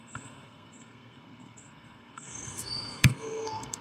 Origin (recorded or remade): remade